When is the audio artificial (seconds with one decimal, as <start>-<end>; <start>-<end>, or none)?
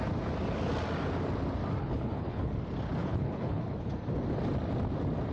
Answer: 1.8-2.5; 3.0-3.9